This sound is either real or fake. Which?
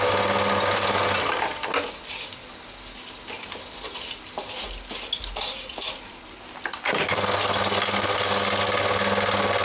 real